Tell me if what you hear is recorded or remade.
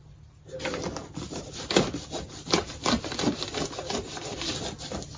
recorded